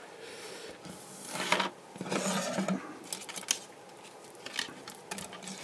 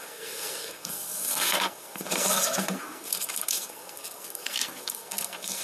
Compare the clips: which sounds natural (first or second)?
first